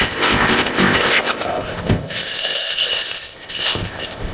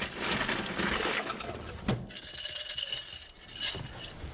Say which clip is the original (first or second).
second